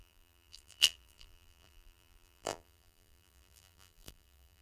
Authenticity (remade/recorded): remade